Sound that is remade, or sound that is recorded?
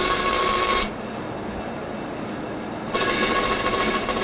recorded